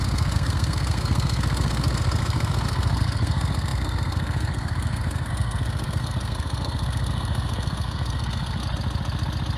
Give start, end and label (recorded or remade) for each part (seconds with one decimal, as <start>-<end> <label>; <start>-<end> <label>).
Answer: 0.0-8.6 remade; 8.6-9.6 recorded